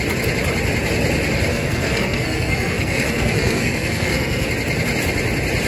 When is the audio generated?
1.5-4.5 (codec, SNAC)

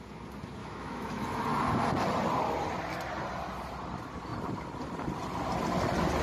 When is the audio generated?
0.6-1.4 (autoencoder, DAC-VAE)

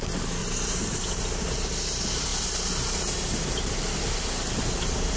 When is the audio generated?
0.4-1.0 (vocoder, BigVGAN v2); 2.3-4.6

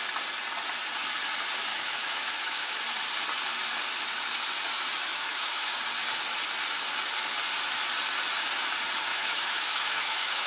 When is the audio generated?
1.7-2.8 (autoencoder, DAC-VAE); 5.1-5.7; 9.1-10.5